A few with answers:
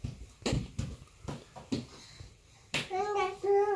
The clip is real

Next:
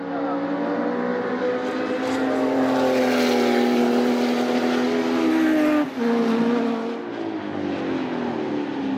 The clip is real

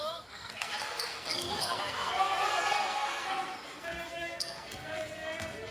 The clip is fake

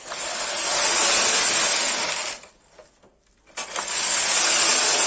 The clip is real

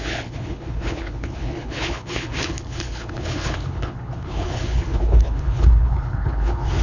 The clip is fake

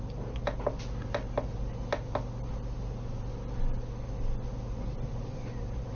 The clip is real